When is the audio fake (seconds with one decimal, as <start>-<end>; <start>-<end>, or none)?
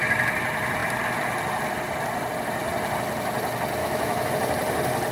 3.8-4.3